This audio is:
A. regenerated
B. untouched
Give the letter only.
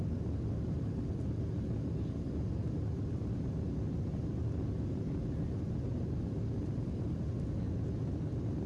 B